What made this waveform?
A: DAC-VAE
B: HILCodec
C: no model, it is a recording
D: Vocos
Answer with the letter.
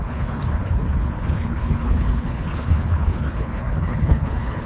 B